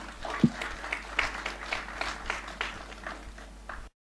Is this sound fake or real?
real